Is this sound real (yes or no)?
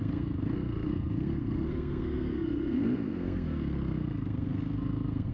no